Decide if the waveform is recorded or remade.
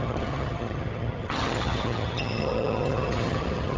remade